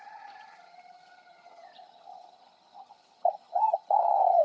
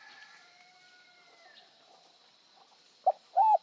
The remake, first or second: first